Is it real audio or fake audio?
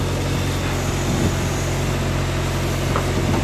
real